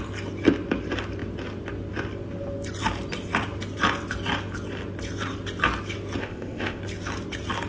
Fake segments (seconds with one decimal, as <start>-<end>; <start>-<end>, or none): 6.2-6.8